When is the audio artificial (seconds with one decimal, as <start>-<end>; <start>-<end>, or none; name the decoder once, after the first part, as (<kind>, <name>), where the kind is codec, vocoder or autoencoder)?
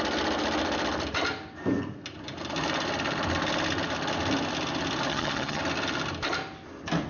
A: 5.1-5.6 (vocoder, HiFi-GAN)